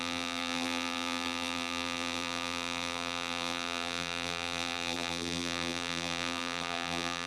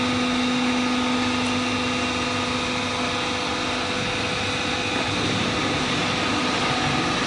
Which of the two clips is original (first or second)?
second